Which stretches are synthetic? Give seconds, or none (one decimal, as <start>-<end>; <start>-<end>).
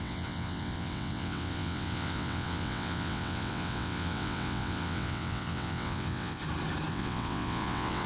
0.0-6.4; 6.9-8.1